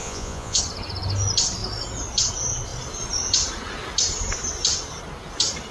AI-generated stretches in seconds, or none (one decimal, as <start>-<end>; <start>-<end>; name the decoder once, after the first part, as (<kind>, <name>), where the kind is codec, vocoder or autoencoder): 0.0-0.6 (vocoder, Vocos)